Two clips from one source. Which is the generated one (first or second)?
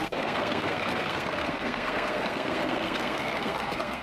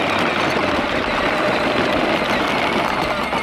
first